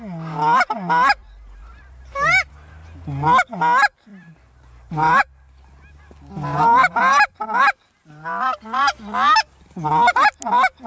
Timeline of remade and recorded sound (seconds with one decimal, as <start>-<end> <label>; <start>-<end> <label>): 0.0-1.2 recorded; 1.2-2.5 remade; 2.5-4.1 recorded; 4.1-5.2 remade; 5.2-6.8 recorded; 6.8-7.6 remade; 7.6-10.9 recorded